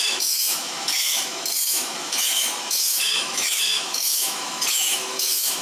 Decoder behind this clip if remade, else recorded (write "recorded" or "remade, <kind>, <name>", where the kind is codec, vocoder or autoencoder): remade, autoencoder, DAC-VAE